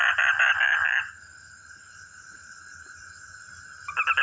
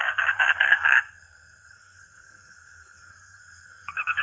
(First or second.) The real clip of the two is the first